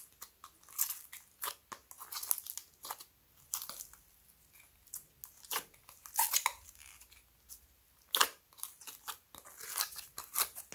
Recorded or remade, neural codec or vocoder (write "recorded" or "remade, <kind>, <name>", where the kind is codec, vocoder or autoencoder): recorded